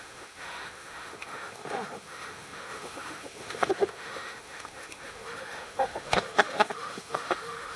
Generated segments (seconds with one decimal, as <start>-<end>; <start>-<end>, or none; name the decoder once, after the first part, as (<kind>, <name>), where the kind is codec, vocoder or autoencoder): 0.0-7.8 (autoencoder, DAC-VAE)